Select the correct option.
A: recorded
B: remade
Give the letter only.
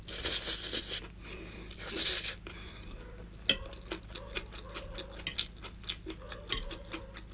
A